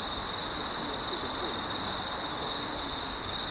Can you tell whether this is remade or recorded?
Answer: recorded